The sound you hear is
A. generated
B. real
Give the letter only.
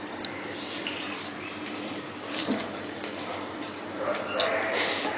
B